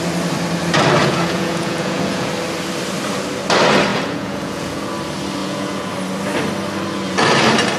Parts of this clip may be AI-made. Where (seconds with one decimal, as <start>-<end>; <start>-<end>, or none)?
1.0-2.3; 3.9-4.9; 5.4-5.9